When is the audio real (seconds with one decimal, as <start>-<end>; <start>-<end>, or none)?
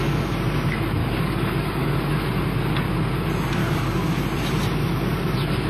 0.0-1.0; 2.1-3.6; 4.1-5.7